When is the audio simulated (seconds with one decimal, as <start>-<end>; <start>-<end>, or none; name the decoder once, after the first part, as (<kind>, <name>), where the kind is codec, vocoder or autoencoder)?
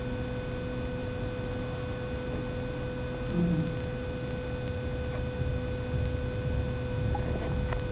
none